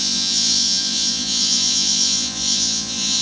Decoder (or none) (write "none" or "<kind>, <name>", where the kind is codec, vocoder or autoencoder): vocoder, Vocos